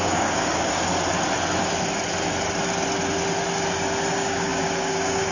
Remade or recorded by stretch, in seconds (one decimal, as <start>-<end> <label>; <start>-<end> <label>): 0.0-0.9 remade; 0.9-4.1 recorded; 4.1-5.3 remade